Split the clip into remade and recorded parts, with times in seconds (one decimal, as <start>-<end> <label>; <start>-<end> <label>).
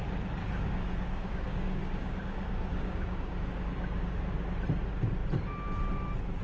0.0-0.4 recorded; 0.4-4.2 remade; 4.2-6.4 recorded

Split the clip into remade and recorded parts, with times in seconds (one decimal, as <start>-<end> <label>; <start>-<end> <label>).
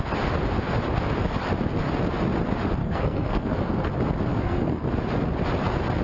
0.0-2.8 recorded; 2.8-3.9 remade; 3.9-4.3 recorded; 4.3-4.9 remade; 4.9-6.0 recorded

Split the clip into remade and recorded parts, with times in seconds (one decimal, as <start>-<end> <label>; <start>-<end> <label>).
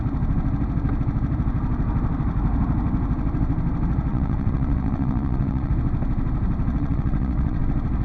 0.0-4.1 recorded; 4.1-5.7 remade; 5.7-6.7 recorded; 6.7-7.6 remade; 7.6-8.0 recorded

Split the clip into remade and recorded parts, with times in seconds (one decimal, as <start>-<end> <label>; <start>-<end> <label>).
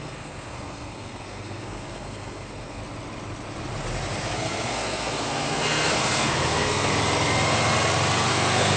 0.0-2.8 remade; 2.8-4.2 recorded; 4.2-6.9 remade; 6.9-8.3 recorded; 8.3-8.8 remade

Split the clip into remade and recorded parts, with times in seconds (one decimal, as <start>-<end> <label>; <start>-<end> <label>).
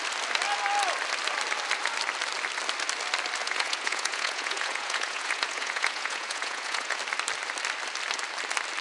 0.0-3.4 recorded; 3.4-7.0 remade; 7.0-8.8 recorded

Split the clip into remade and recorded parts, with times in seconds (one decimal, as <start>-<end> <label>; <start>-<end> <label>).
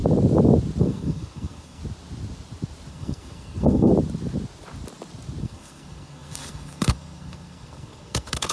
0.0-0.8 recorded; 0.8-1.8 remade; 1.8-2.9 recorded; 2.9-3.9 remade; 3.9-5.4 recorded; 5.4-8.5 remade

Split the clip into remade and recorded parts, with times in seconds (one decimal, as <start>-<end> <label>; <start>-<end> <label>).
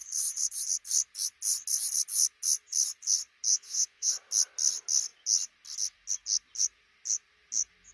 0.0-3.5 recorded; 3.5-4.1 remade; 4.1-7.9 recorded